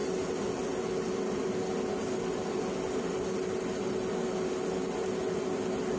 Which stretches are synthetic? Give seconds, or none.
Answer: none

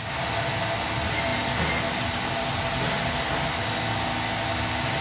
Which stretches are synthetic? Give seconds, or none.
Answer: none

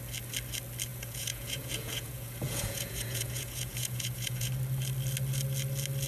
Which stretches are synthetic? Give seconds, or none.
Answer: 0.9-4.5